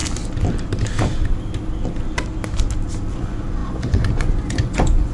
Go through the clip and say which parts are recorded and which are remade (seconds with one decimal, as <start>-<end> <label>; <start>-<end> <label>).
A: 0.0-3.1 recorded; 3.1-5.1 remade

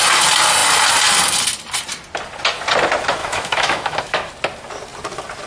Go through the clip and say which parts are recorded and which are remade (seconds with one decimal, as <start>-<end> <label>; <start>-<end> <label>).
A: 0.0-3.2 recorded; 3.2-4.3 remade; 4.3-5.5 recorded

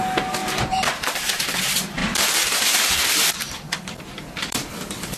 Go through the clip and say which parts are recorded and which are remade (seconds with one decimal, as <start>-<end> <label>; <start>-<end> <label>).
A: 0.0-0.4 recorded; 0.4-1.6 remade; 1.6-2.0 recorded; 2.0-5.2 remade

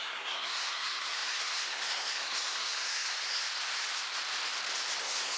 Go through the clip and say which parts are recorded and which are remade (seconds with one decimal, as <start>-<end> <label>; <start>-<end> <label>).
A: 0.0-3.4 remade; 3.4-5.0 recorded; 5.0-5.4 remade